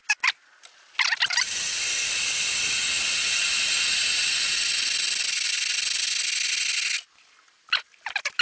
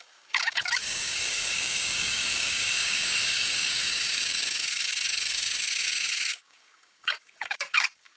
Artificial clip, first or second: second